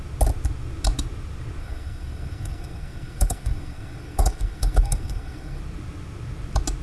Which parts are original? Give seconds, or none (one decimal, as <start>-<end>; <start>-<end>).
0.0-1.6; 5.6-6.8